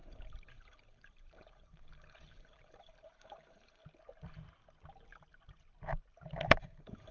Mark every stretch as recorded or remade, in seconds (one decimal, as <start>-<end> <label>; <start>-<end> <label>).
0.0-3.8 remade; 3.8-6.6 recorded; 6.6-7.1 remade